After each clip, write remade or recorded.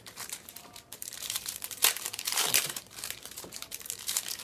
remade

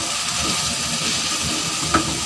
recorded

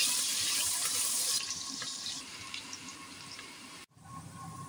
remade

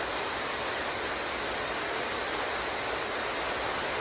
recorded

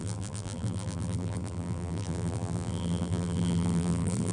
remade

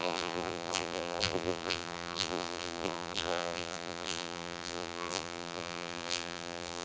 remade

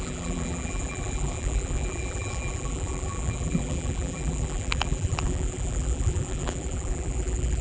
remade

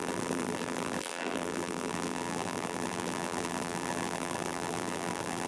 remade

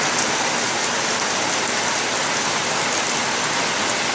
recorded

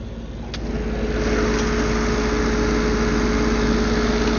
recorded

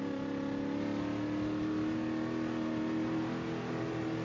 recorded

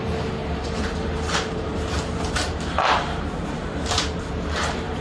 remade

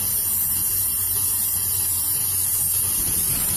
remade